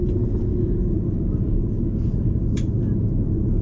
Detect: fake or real real